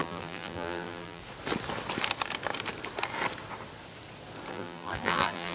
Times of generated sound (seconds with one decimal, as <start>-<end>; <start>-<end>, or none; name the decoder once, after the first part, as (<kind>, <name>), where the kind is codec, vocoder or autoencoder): 0.0-1.2 (vocoder, BigVGAN v2); 4.5-5.5